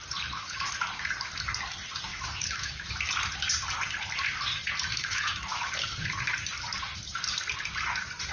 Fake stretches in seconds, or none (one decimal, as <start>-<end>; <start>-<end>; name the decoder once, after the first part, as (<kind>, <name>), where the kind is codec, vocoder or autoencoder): 2.1-2.9 (autoencoder, DAC-VAE); 4.9-5.7